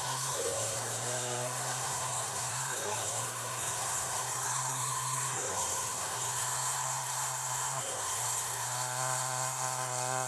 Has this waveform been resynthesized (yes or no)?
yes